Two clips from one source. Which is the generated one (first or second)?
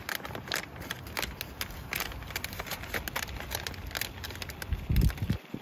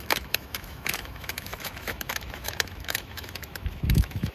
second